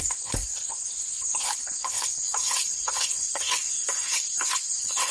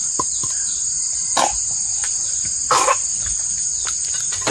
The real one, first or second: second